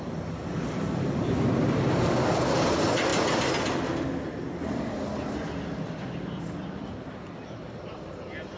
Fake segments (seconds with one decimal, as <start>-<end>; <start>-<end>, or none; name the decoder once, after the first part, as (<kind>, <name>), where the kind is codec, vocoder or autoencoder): none